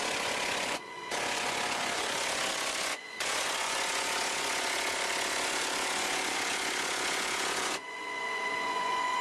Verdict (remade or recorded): remade